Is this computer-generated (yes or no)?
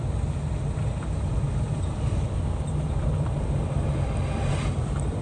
yes